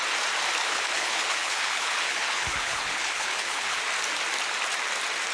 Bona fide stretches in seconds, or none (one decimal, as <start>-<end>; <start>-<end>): 0.0-0.6; 3.8-5.3